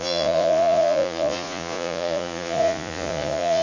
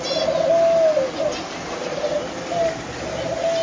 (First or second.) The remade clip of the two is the first